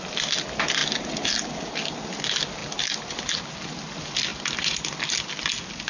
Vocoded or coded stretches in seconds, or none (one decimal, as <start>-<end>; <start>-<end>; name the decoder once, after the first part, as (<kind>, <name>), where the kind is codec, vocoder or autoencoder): 2.6-3.5 (vocoder, BigVGAN v2)